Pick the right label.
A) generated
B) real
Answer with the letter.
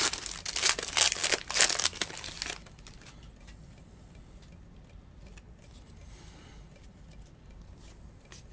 B